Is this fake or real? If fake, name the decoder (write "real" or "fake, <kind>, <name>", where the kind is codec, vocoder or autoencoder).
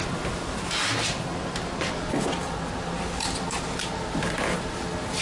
real